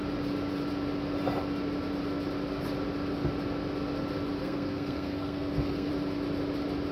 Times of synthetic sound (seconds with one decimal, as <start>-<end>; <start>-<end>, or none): 4.4-5.9